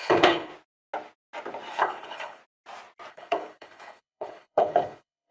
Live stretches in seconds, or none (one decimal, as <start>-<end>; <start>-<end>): 0.5-1.7; 2.4-3.1